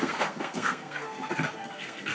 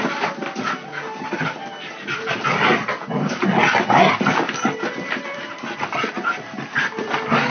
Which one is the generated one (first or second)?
first